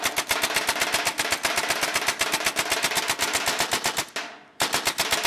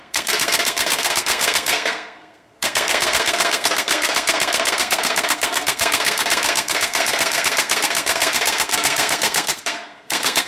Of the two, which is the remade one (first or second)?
second